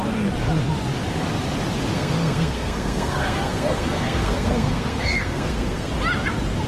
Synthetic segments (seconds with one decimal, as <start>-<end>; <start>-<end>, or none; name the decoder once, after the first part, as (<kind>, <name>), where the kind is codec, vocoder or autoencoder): 1.9-5.9 (codec, SNAC)